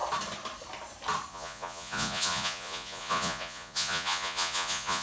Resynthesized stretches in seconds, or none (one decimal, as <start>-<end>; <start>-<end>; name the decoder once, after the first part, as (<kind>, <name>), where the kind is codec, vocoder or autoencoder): 1.3-5.0 (vocoder, Vocos)